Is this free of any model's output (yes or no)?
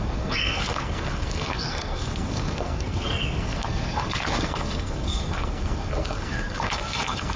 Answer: no